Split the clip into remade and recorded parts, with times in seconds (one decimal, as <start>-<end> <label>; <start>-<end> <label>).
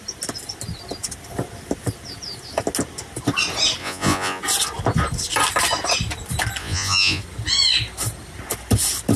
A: 0.0-3.8 recorded; 3.8-4.4 remade; 4.4-6.6 recorded; 6.6-7.2 remade; 7.2-9.2 recorded